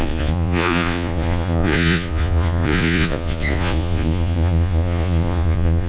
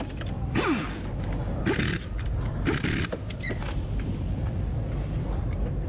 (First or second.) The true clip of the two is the second